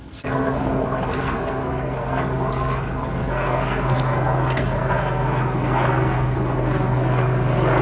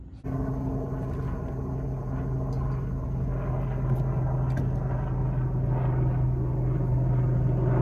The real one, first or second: second